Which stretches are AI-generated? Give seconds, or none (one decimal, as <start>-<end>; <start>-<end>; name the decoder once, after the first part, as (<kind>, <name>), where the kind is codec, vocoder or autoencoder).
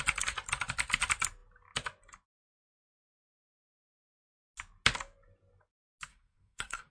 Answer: 6.1-6.9 (codec, SNAC)